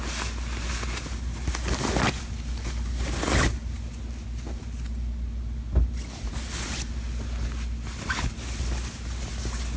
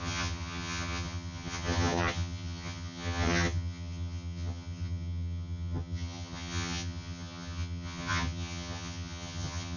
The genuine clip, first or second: first